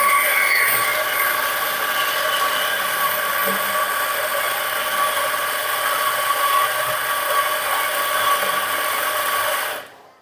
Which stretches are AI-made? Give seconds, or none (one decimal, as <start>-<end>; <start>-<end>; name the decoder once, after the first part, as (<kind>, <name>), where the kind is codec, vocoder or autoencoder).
none

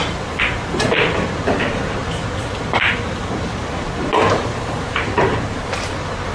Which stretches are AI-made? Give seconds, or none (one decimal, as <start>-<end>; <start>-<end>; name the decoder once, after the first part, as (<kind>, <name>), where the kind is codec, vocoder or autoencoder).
1.5-2.0 (vocoder, BigVGAN v2); 3.5-6.3

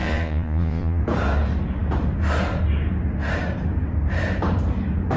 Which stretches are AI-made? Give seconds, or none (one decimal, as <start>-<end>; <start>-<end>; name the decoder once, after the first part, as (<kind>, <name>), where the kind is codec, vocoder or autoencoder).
0.0-1.0 (vocoder, Vocos)

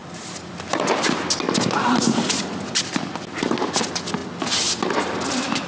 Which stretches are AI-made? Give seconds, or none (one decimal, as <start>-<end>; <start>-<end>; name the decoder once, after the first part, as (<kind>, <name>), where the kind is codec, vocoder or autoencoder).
none